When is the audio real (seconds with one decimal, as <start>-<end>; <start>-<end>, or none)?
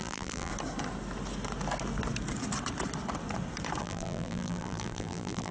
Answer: 0.5-3.8